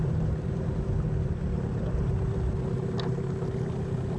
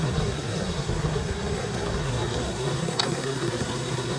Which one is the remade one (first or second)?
second